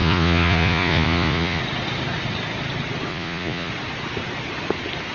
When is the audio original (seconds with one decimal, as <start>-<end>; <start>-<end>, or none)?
1.6-3.1; 3.7-5.1